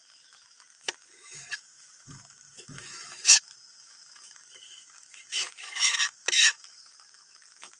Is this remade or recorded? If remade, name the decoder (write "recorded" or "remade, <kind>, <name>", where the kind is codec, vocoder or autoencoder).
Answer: remade, autoencoder, DAC-VAE